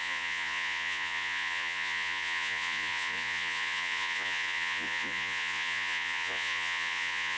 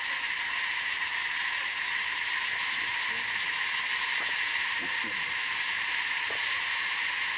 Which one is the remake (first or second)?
first